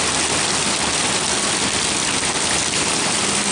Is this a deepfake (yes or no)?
no